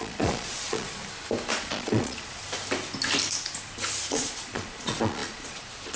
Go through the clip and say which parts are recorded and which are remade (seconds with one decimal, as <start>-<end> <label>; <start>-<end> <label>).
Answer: 0.0-1.0 remade; 1.0-1.5 recorded; 1.5-2.4 remade; 2.4-4.1 recorded; 4.1-6.0 remade